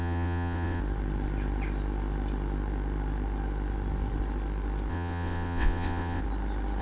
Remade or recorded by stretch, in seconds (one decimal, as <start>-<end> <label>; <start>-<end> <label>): 0.0-0.8 remade; 0.8-4.9 recorded; 4.9-6.2 remade; 6.2-6.8 recorded